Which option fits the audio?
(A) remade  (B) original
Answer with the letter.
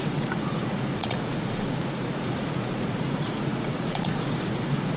A